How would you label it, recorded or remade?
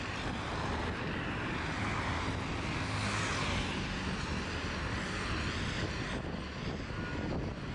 recorded